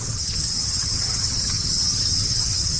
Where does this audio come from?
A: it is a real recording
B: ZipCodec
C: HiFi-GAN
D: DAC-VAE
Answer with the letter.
C